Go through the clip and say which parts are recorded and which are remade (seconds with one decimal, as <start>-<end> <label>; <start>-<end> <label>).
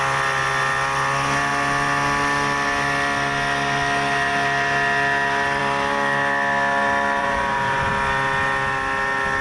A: 0.0-7.2 recorded; 7.2-7.9 remade; 7.9-9.4 recorded